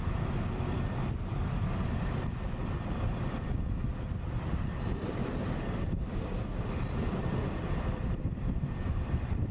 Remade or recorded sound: remade